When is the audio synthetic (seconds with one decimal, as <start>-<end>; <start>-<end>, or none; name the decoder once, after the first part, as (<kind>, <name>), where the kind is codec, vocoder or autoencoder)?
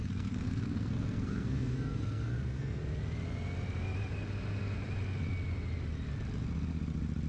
0.0-2.8 (codec, SNAC)